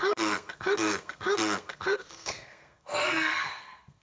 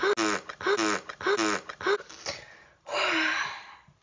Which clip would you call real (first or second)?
second